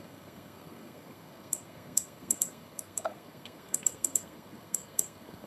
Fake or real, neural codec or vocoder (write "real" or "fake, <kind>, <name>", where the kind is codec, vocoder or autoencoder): fake, codec, SNAC